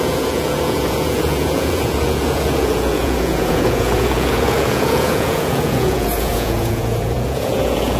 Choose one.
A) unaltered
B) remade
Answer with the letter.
B